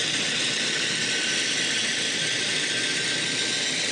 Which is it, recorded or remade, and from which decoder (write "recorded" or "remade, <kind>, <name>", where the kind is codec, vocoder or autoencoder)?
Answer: recorded